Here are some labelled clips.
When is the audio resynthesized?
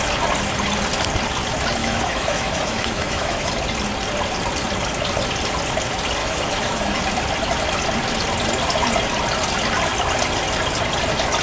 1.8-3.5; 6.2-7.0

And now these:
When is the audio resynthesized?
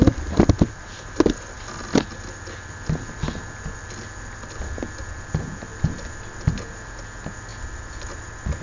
none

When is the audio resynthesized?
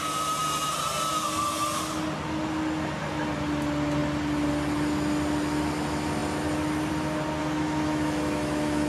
7.4-8.9